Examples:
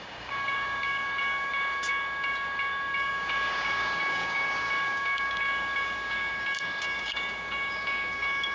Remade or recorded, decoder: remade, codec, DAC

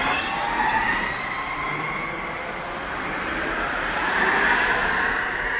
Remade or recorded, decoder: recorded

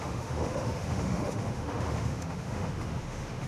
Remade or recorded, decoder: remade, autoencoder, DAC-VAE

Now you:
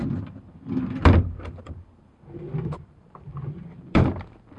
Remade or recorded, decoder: remade, vocoder, BigVGAN v2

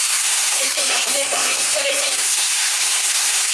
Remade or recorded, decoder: remade, codec, SNAC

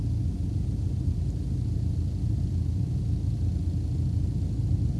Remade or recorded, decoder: recorded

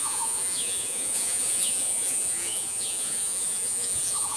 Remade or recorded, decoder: remade, vocoder, Vocos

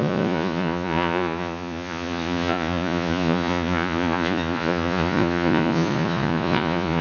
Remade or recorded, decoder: remade, vocoder, Vocos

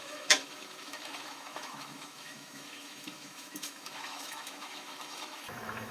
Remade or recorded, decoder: remade, autoencoder, DAC-VAE